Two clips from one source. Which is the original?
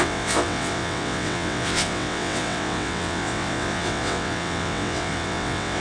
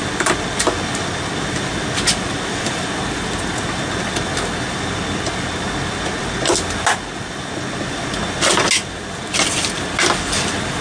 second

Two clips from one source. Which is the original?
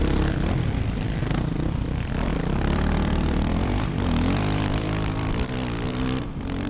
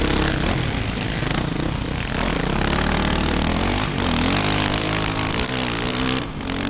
second